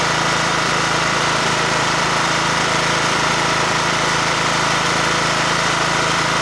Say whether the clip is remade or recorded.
remade